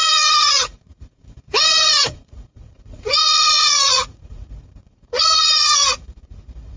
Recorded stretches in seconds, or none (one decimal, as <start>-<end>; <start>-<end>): none